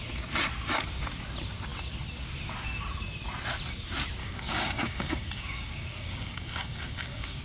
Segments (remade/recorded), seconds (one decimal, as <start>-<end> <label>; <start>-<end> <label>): 0.0-4.2 recorded; 4.2-7.4 remade